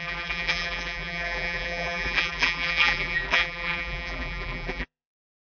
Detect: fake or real fake